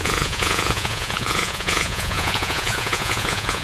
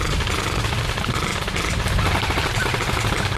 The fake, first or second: first